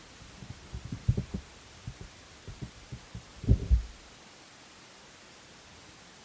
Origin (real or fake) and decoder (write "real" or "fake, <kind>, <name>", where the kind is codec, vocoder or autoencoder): real